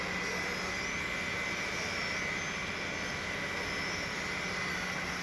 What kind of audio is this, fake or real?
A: real